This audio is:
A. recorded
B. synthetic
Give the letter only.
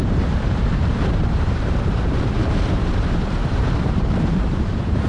B